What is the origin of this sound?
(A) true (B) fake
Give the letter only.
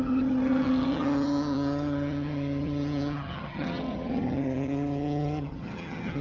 B